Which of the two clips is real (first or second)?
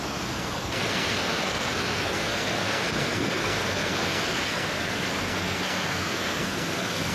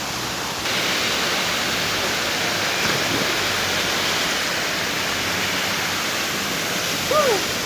second